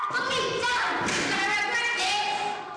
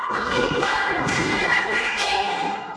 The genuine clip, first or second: first